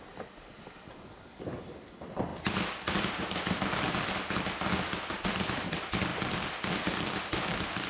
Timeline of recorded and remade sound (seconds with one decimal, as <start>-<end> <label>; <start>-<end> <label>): 0.0-6.1 remade; 6.1-6.7 recorded; 6.7-7.9 remade